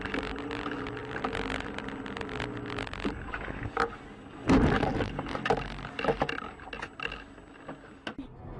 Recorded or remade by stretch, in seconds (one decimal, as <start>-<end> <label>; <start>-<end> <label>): 0.0-8.6 recorded